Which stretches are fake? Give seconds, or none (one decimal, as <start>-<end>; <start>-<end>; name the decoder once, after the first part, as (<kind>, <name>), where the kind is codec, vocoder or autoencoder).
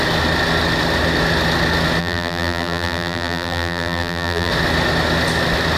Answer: 2.0-4.5 (vocoder, BigVGAN v2)